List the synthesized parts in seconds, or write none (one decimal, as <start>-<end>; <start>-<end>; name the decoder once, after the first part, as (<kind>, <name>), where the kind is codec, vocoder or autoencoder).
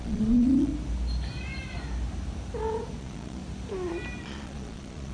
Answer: 0.0-0.7 (vocoder, Vocos); 3.0-3.4; 4.2-5.1